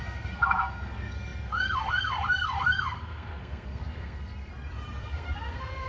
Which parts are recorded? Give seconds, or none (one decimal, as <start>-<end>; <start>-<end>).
4.5-5.0